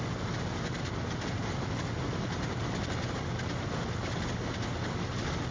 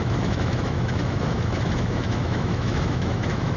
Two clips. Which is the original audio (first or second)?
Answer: first